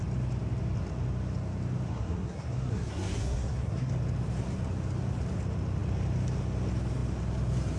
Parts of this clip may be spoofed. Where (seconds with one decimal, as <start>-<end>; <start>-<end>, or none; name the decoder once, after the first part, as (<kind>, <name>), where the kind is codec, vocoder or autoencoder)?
1.9-3.9 (codec, SNAC)